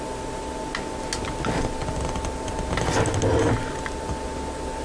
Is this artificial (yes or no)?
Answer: no